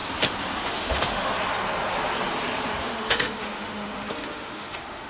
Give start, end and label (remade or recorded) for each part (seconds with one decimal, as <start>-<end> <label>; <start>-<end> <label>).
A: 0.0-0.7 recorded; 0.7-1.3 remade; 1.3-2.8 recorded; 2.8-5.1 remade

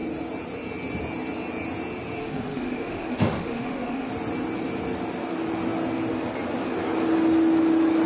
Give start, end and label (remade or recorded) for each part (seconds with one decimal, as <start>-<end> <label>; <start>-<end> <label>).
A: 0.0-2.2 recorded; 2.2-4.1 remade; 4.1-8.1 recorded

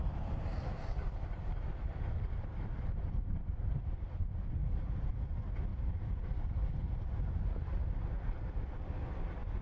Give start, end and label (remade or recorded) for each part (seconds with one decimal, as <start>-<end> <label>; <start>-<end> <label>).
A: 0.0-1.0 recorded; 1.0-3.8 remade; 3.8-4.6 recorded; 4.6-5.1 remade; 5.1-5.7 recorded; 5.7-6.7 remade; 6.7-9.6 recorded

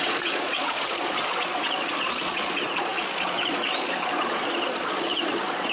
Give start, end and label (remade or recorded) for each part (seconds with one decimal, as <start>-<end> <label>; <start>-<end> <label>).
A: 0.0-5.7 remade

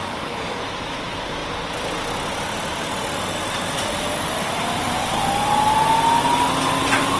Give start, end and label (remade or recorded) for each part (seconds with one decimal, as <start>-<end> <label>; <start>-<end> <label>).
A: 0.0-0.6 remade; 0.6-7.2 recorded

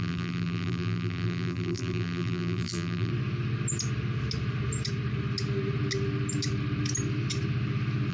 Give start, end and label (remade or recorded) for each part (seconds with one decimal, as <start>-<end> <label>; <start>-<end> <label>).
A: 0.0-3.1 remade; 3.1-8.1 recorded

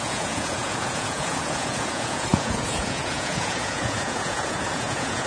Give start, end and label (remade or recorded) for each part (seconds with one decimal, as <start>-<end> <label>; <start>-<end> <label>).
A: 0.0-5.3 remade

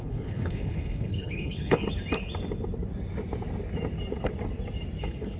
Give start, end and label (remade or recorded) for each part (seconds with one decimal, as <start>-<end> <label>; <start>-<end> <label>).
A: 0.0-1.8 remade; 1.8-5.0 recorded; 5.0-5.4 remade